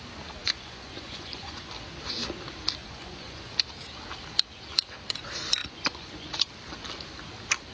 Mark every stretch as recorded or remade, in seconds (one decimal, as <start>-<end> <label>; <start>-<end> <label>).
0.0-0.4 recorded; 0.4-1.7 remade; 1.7-2.8 recorded; 2.8-3.5 remade; 3.5-5.6 recorded; 5.6-6.5 remade; 6.5-7.7 recorded